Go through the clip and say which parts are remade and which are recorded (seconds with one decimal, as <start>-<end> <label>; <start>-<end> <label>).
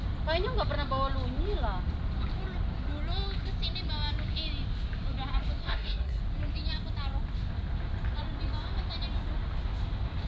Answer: 0.0-5.6 recorded; 5.6-6.2 remade; 6.2-10.3 recorded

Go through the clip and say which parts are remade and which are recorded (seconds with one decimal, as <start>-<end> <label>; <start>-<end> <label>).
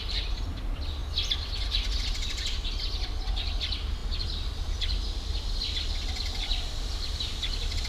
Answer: 0.0-7.9 recorded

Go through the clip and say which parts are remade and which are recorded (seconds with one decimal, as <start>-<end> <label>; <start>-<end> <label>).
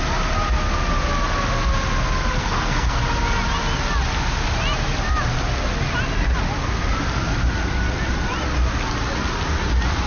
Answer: 0.0-2.4 recorded; 2.4-3.0 remade; 3.0-10.1 recorded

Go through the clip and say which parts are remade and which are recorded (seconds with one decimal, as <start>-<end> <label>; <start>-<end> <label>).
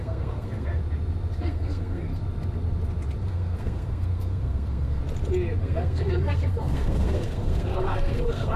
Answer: 0.0-0.8 remade; 0.8-1.4 recorded; 1.4-2.1 remade; 2.1-3.2 recorded; 3.2-5.0 remade; 5.0-5.6 recorded; 5.6-8.6 remade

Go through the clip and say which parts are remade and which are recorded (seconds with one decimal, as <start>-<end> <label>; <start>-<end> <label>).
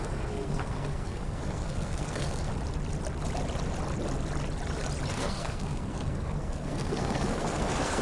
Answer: 0.0-2.5 remade; 2.5-5.1 recorded; 5.1-8.0 remade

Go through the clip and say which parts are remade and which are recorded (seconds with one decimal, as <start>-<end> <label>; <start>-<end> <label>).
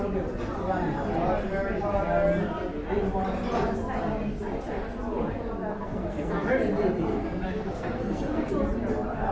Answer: 0.0-5.7 recorded; 5.7-6.5 remade; 6.5-7.1 recorded; 7.1-8.5 remade; 8.5-9.3 recorded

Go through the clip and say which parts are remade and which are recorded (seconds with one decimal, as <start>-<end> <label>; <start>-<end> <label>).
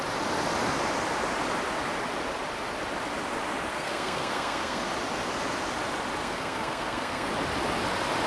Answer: 0.0-3.7 recorded; 3.7-4.8 remade; 4.8-6.2 recorded; 6.2-7.3 remade; 7.3-8.3 recorded